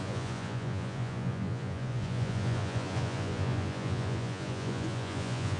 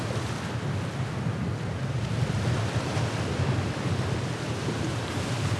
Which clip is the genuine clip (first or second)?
second